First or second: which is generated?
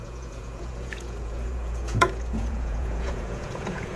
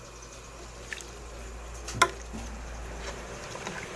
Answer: first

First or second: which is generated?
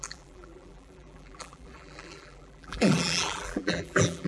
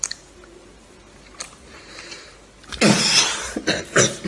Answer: first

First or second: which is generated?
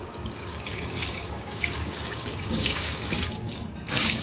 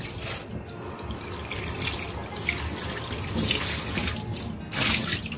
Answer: first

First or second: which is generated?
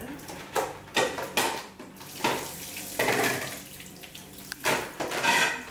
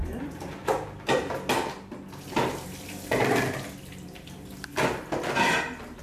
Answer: first